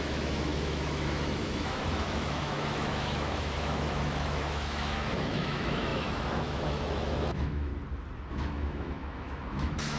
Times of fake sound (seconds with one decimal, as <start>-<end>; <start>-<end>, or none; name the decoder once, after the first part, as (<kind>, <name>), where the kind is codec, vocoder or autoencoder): 0.0-7.7 (autoencoder, DAC-VAE); 8.3-10.0